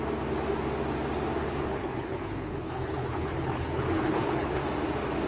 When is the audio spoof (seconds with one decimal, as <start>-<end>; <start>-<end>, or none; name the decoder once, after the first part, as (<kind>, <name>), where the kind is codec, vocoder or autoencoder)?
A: 1.4-4.6 (codec, HILCodec)